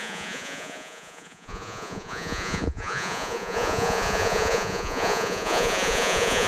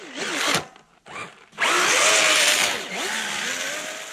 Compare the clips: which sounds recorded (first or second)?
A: second